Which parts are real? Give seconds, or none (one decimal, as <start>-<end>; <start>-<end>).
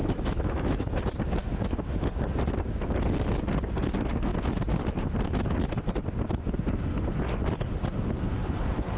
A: 0.9-1.4; 2.0-9.0